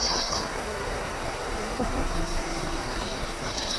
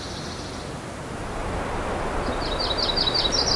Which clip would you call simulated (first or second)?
first